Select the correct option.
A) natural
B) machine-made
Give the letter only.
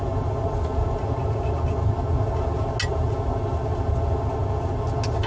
A